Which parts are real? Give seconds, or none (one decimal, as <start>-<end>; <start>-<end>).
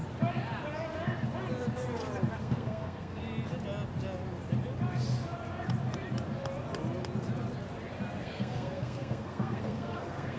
0.0-2.4; 3.2-8.2